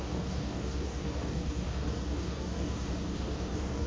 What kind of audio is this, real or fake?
fake